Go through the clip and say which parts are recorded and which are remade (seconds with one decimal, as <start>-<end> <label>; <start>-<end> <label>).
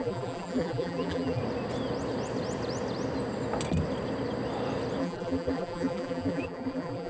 0.0-1.4 remade; 1.4-5.0 recorded; 5.0-7.1 remade